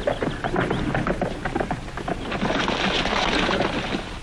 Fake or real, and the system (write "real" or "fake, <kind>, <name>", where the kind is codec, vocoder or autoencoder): real